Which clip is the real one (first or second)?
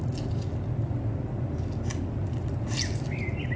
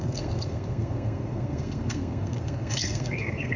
first